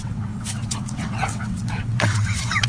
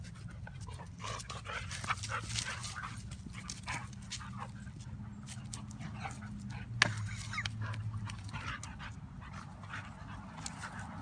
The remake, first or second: first